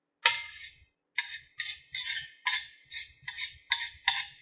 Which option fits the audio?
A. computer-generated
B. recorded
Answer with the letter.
B